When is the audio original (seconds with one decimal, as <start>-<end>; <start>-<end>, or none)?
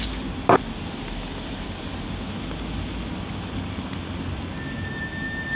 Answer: 0.0-5.6